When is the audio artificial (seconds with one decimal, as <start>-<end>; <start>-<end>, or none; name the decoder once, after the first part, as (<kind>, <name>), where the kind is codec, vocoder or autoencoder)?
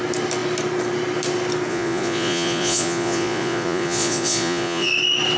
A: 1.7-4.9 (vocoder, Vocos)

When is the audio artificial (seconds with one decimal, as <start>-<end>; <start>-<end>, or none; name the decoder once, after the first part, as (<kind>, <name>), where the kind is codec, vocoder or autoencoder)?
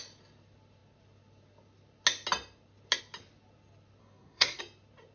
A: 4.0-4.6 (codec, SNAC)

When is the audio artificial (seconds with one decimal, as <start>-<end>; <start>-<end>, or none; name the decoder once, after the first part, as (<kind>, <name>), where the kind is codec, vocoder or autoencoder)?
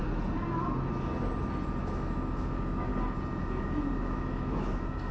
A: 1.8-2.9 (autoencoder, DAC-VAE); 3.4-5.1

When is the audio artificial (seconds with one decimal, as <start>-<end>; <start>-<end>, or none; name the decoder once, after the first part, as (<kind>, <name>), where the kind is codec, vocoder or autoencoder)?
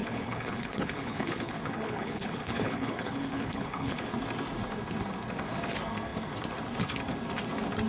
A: 0.0-4.1 (codec, HILCodec)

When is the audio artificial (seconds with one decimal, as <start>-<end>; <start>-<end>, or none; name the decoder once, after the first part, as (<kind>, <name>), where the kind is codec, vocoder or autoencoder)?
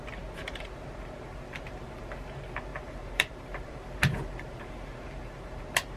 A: 2.7-5.6 (vocoder, BigVGAN v2)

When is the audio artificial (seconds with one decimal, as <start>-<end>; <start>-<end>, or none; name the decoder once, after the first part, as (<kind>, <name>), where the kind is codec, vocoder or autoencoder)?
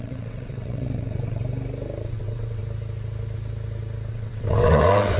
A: 0.0-1.4 (vocoder, WaveNeXt); 2.0-2.6; 4.1-5.2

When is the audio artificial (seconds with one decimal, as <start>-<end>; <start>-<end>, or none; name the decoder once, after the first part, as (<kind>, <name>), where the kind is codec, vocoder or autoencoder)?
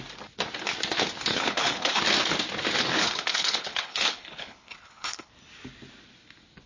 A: 1.3-2.0 (codec, HILCodec); 2.9-5.3